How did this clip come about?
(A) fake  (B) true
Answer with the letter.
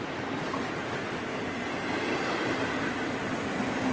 B